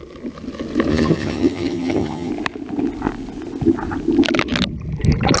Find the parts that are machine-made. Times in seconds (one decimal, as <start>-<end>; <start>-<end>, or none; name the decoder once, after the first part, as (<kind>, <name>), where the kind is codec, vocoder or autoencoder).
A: 0.9-2.3 (vocoder, HiFi-GAN)